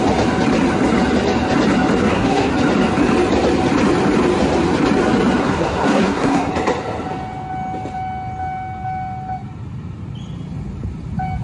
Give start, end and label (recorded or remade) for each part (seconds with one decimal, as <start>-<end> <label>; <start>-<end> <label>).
0.0-2.0 recorded; 2.0-2.5 remade; 2.5-5.4 recorded; 5.4-6.5 remade; 6.5-11.4 recorded